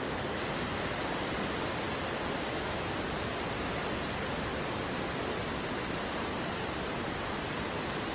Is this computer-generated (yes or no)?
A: no